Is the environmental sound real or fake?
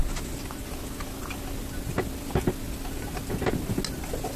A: real